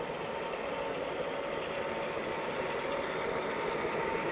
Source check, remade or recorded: recorded